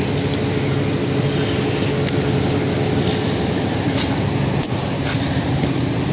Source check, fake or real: real